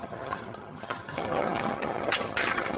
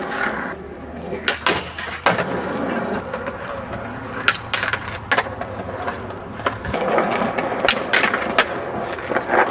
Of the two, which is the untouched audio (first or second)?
second